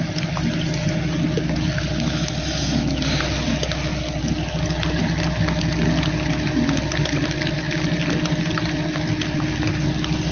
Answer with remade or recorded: recorded